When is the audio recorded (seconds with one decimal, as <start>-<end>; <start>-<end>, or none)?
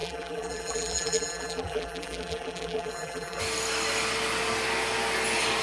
3.4-5.6